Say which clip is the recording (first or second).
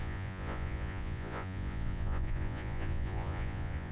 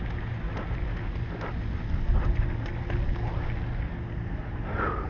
second